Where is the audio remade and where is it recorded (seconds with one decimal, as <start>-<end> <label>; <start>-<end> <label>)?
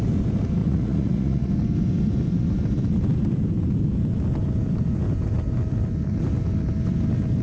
0.0-0.6 recorded; 0.6-1.5 remade; 1.5-7.4 recorded